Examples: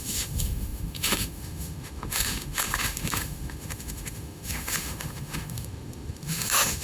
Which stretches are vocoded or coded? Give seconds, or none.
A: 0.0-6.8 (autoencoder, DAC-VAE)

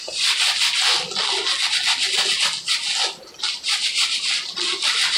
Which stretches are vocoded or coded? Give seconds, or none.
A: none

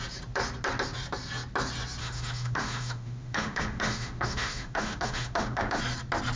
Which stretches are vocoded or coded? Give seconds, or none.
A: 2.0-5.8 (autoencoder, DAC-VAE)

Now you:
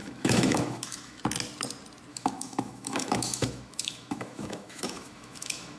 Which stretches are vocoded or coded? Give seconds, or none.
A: 0.0-1.2 (autoencoder, DAC-VAE); 2.1-5.8

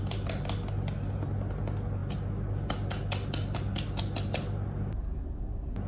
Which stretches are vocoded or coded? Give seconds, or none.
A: none

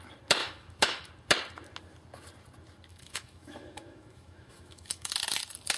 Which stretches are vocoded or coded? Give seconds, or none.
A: 0.4-1.1 (autoencoder, DAC-VAE); 2.9-5.1

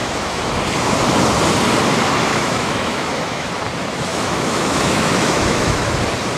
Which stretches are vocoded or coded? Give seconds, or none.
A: 0.0-0.6 (autoencoder, DAC-VAE); 2.3-3.5; 4.1-5.9